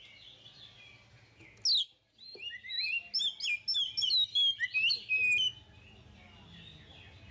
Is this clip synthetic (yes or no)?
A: no